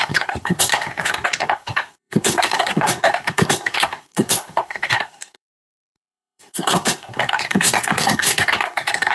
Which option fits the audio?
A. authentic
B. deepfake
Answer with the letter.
B